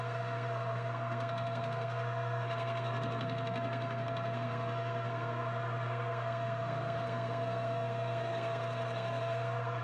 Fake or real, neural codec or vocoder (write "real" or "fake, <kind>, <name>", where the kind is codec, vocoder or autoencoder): fake, codec, SNAC